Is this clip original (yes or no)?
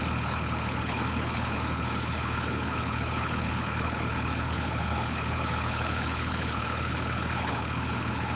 no